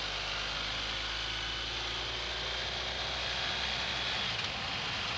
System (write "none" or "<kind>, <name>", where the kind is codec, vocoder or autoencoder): none